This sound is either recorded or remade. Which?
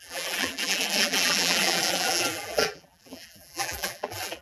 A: remade